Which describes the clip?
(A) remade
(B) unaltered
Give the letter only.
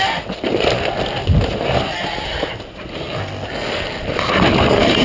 B